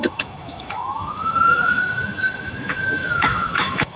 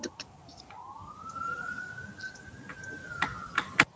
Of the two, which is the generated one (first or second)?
first